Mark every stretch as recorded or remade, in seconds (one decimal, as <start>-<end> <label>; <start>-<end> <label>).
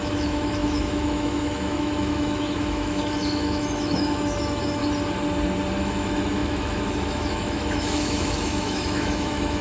0.0-4.8 remade; 4.8-5.8 recorded; 5.8-9.6 remade